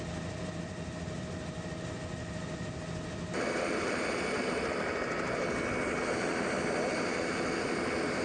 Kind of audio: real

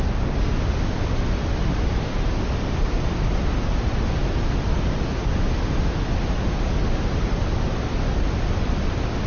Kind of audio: real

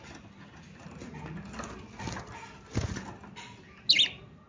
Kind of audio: real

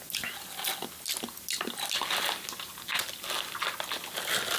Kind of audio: real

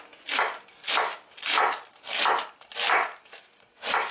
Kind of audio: real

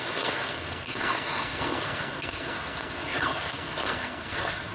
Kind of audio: fake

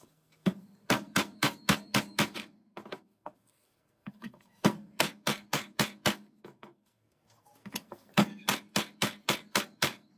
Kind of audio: fake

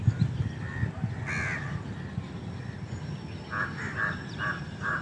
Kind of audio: real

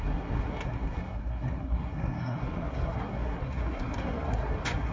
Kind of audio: fake